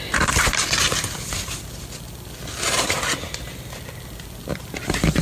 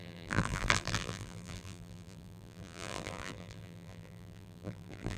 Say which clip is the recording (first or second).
first